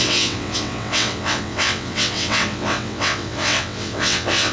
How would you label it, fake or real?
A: fake